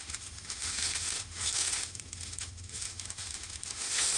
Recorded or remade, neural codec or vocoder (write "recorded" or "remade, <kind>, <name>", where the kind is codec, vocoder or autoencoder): remade, autoencoder, DAC-VAE